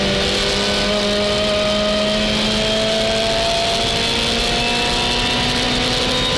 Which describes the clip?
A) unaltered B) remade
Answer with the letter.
A